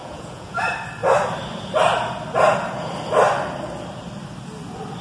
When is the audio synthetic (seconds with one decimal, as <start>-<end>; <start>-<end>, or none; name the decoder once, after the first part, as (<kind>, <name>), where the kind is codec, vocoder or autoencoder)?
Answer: 0.0-0.6 (vocoder, Vocos)